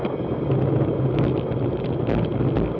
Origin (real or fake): real